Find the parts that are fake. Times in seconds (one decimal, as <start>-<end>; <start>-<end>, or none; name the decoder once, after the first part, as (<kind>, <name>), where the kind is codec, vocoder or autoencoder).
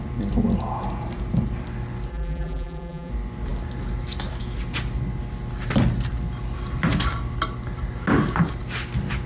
2.1-3.1 (vocoder, BigVGAN v2)